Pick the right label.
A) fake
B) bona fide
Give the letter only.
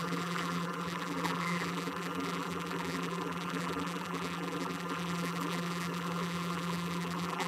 A